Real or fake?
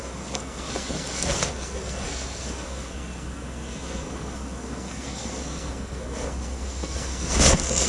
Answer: fake